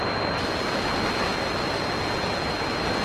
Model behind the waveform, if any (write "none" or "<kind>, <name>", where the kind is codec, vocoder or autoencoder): none